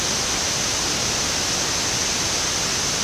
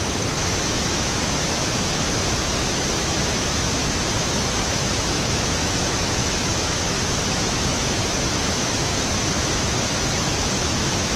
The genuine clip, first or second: first